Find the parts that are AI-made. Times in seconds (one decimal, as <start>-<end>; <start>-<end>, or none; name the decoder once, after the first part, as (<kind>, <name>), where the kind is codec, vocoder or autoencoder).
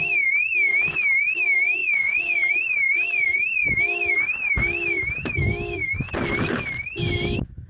1.8-2.5 (vocoder, Vocos)